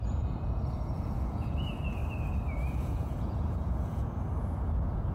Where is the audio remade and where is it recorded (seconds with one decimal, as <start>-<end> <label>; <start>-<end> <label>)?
0.0-2.0 remade; 2.0-2.7 recorded; 2.7-5.1 remade